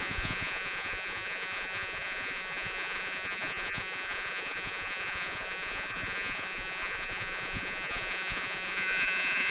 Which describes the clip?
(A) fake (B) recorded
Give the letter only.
A